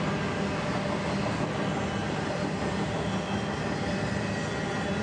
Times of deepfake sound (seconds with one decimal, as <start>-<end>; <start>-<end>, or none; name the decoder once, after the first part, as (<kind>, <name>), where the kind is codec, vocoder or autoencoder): 2.0-2.9 (vocoder, BigVGAN v2)